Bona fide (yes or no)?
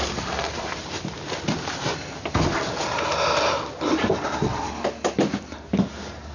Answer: yes